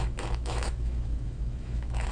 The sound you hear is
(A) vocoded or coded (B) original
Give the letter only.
A